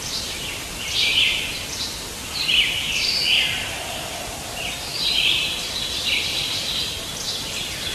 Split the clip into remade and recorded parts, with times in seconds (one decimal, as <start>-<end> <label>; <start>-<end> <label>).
0.0-7.9 remade